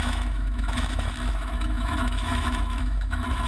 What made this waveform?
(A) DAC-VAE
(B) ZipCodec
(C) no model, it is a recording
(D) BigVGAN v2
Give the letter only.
A